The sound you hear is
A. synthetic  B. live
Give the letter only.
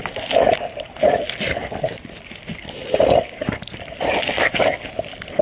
A